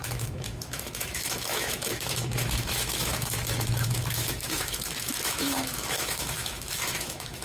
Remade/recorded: remade